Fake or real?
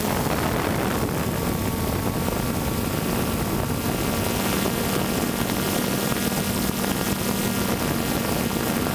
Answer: real